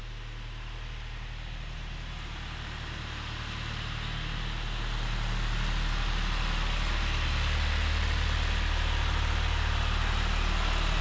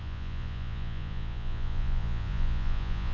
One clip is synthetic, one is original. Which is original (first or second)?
first